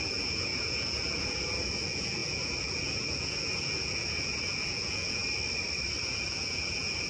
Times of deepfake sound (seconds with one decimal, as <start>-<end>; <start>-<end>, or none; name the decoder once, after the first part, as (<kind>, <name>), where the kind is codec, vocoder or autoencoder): 0.0-5.2 (vocoder, Vocos); 6.0-7.1

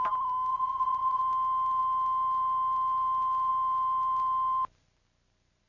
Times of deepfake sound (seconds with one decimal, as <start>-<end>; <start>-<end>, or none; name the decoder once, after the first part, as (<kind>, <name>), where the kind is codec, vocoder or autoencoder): 0.5-1.2 (vocoder, Vocos)

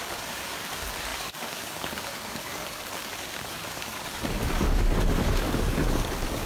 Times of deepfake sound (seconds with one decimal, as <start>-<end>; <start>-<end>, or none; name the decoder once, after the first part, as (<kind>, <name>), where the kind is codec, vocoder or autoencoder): 0.0-6.5 (codec, DAC)

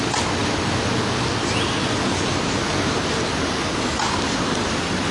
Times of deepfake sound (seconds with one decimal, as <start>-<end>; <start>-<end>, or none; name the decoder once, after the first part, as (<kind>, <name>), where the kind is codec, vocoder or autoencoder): none